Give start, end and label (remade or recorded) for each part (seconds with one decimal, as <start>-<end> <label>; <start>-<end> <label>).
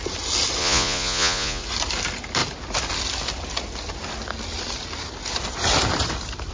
0.0-0.6 recorded; 0.6-1.6 remade; 1.6-6.5 recorded